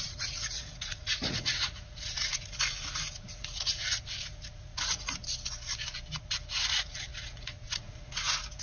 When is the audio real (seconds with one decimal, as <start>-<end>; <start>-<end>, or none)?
5.2-6.2